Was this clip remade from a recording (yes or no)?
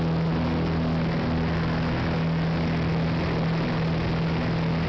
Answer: no